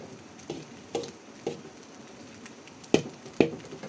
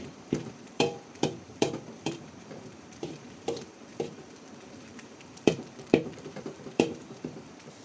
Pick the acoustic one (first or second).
first